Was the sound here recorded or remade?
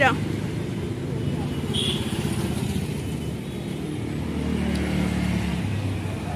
recorded